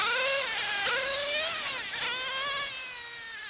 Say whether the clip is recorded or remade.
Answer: recorded